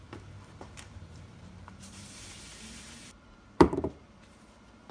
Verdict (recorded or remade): remade